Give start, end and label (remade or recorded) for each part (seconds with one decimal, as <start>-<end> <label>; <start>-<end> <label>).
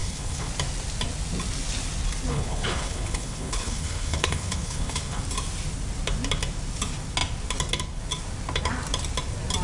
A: 0.0-0.5 remade; 0.5-2.3 recorded; 2.3-5.2 remade; 5.2-9.6 recorded